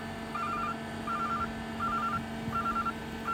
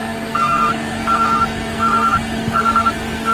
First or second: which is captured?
first